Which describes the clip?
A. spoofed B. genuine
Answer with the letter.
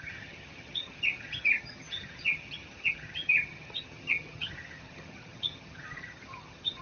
A